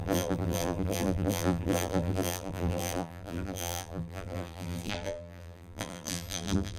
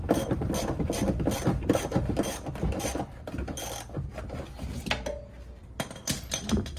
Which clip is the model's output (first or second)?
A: first